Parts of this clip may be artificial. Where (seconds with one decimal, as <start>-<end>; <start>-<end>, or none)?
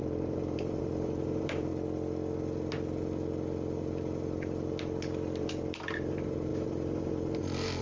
0.0-1.7; 5.4-7.8